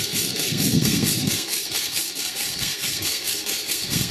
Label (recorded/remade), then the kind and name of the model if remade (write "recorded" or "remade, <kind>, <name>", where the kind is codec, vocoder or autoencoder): remade, codec, SNAC